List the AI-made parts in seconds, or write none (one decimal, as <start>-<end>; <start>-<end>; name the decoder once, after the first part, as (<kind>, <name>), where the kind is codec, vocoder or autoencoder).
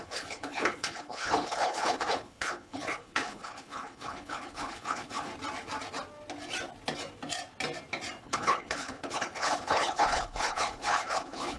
0.0-5.3 (codec, HILCodec); 8.2-11.6